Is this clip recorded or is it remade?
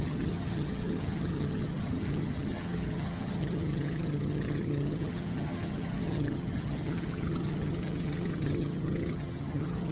remade